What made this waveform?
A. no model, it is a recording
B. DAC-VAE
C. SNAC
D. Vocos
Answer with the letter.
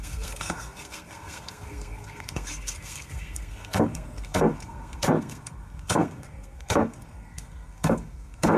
C